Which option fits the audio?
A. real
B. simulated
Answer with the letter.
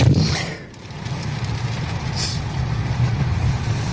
A